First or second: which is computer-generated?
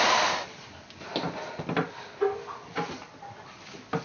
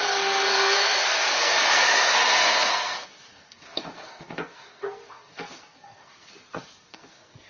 second